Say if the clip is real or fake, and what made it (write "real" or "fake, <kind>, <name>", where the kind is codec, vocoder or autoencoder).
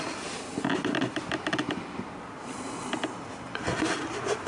real